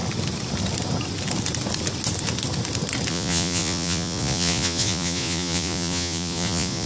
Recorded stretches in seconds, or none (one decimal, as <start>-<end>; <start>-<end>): 0.0-3.1